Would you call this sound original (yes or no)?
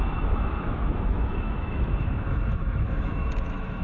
no